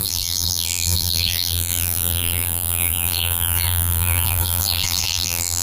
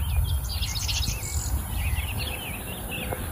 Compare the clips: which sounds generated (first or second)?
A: first